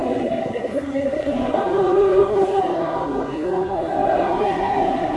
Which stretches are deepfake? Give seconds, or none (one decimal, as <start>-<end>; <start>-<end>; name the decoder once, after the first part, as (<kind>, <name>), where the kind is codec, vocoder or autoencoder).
0.0-5.2 (codec, SNAC)